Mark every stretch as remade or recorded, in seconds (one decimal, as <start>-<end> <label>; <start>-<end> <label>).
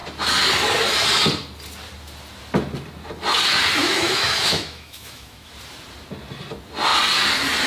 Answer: 0.0-3.8 recorded; 3.8-5.5 remade; 5.5-7.7 recorded